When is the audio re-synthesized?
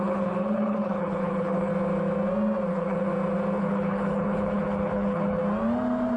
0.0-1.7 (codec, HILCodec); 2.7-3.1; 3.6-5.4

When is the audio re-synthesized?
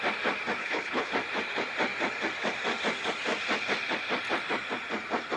0.6-1.1 (codec, HILCodec)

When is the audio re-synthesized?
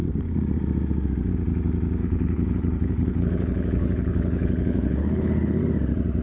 2.0-5.6 (codec, HILCodec)